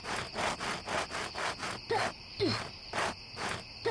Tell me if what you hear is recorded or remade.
recorded